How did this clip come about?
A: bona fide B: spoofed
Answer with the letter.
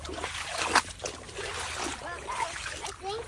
A